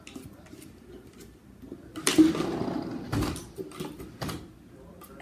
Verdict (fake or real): real